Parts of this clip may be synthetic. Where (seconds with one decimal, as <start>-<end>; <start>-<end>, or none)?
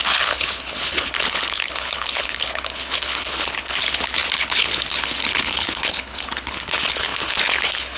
0.0-8.0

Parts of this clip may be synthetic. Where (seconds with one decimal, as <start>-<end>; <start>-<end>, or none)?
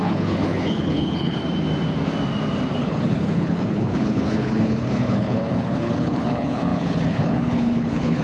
0.0-1.4; 2.8-8.2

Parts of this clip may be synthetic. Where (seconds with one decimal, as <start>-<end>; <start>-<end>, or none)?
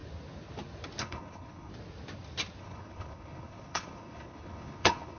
1.0-1.7; 2.6-5.2